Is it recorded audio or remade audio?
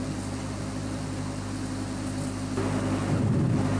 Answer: recorded